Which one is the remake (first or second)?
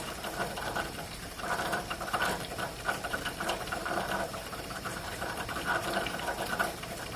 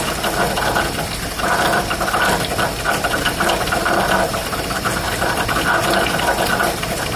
first